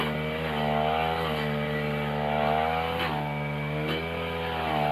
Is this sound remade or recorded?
recorded